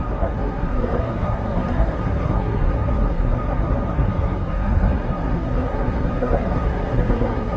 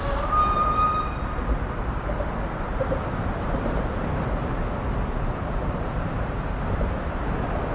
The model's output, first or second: first